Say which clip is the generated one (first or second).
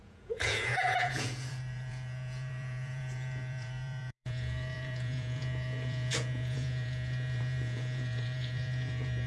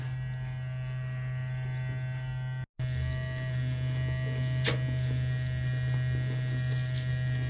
first